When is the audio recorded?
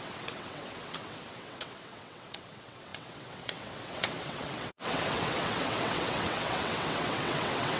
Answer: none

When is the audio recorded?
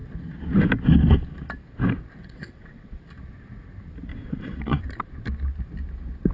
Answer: 0.0-2.2; 3.0-4.1; 4.8-6.3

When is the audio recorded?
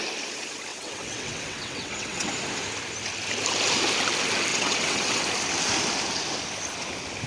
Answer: 0.0-0.7; 2.3-4.5; 5.2-7.3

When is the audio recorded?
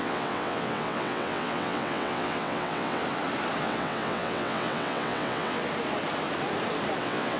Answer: 3.0-3.6; 5.6-7.0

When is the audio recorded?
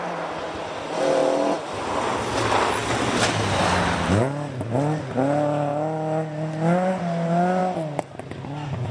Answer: 0.0-8.9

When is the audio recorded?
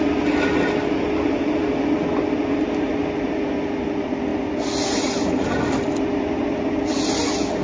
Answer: 0.0-7.6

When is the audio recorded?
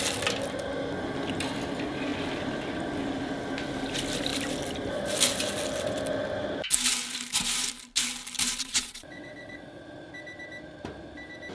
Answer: 0.0-8.6; 9.8-11.5